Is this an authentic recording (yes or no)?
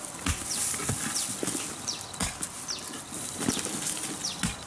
yes